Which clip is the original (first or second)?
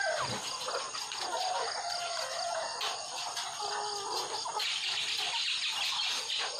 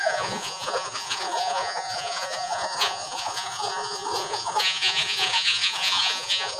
first